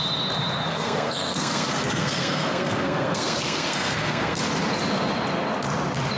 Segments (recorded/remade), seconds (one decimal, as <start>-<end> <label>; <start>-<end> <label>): 0.0-0.7 recorded; 0.7-4.4 remade; 4.4-6.2 recorded